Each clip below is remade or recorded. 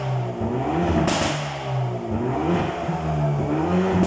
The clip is recorded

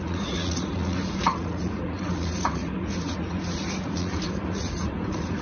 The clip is remade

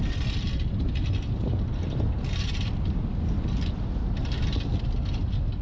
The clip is recorded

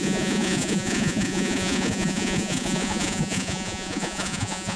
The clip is remade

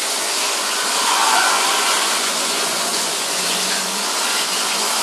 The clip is remade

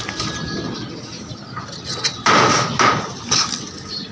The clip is recorded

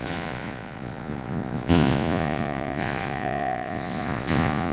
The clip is remade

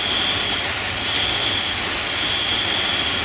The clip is recorded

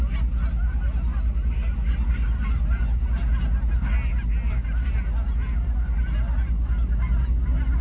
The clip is recorded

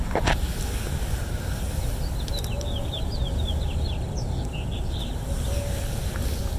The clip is recorded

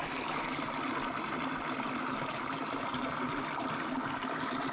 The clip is recorded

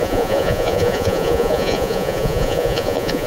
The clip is remade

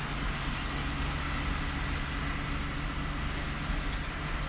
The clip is recorded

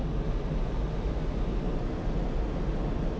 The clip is recorded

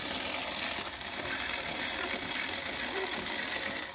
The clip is recorded